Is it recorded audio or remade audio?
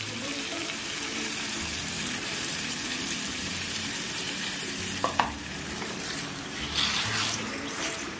remade